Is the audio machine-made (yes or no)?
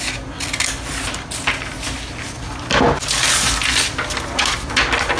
no